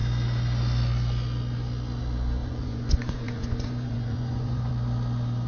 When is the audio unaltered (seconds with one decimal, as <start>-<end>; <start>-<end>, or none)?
0.0-2.4; 4.7-5.5